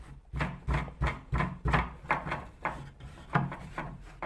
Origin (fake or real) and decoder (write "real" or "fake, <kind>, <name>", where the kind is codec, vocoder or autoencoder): real